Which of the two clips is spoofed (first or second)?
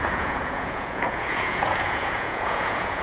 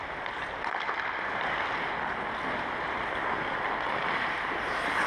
first